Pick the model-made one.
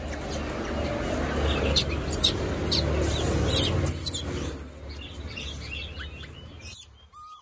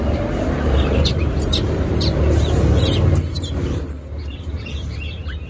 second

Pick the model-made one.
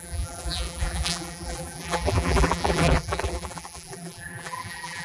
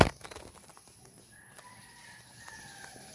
first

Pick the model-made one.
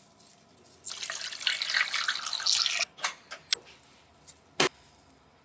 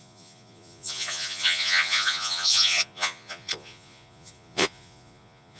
second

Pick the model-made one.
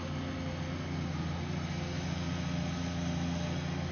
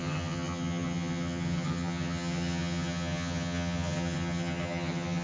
second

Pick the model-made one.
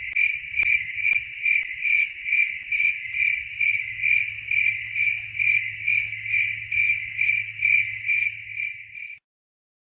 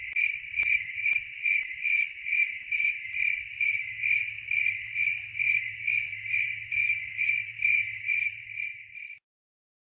second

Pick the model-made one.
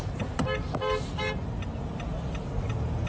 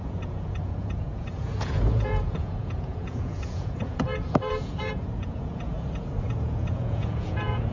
second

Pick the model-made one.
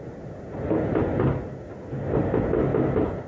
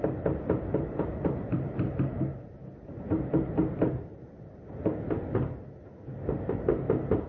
second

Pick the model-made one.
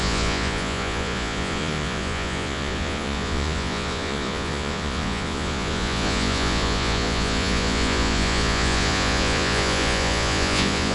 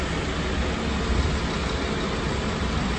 first